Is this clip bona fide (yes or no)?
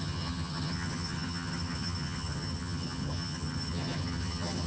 no